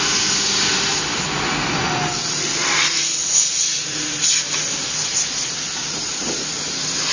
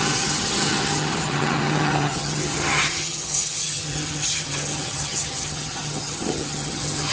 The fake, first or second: second